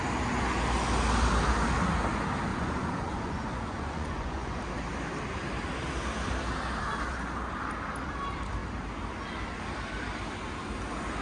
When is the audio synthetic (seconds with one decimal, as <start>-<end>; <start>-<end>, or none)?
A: 2.5-4.6